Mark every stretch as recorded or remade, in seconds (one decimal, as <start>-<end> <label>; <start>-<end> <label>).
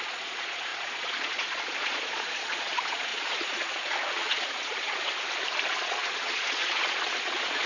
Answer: 0.0-5.1 remade; 5.1-5.8 recorded; 5.8-7.7 remade